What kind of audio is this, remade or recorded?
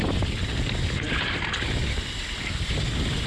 recorded